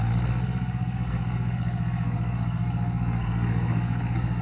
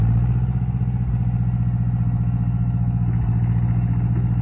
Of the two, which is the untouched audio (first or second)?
second